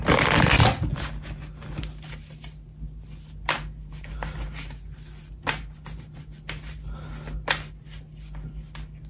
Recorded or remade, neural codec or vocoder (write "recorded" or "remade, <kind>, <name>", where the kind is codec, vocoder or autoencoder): recorded